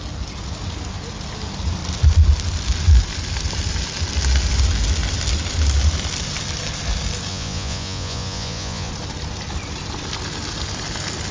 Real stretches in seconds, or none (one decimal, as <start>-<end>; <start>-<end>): 0.0-7.3; 8.9-11.3